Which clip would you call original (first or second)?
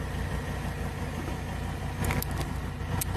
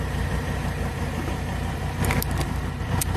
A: first